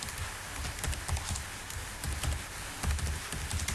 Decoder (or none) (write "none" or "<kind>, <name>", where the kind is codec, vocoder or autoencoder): none